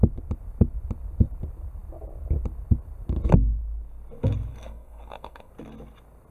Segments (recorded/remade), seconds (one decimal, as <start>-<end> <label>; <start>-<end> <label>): 0.0-4.5 recorded; 4.5-5.5 remade; 5.5-6.3 recorded